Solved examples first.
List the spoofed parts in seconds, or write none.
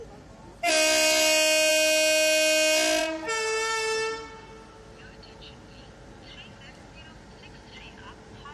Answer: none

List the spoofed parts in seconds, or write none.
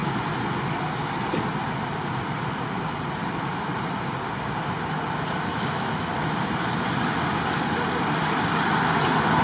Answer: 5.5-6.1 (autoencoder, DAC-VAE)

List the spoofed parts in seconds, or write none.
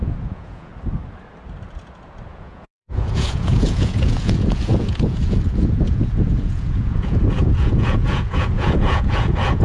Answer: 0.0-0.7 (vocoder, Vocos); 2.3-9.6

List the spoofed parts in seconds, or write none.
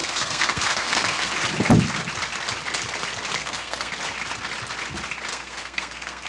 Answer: 0.0-1.3 (codec, SNAC); 3.4-3.9; 5.3-6.3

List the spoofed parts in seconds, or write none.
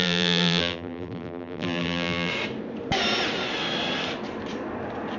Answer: 0.0-2.3 (vocoder, BigVGAN v2)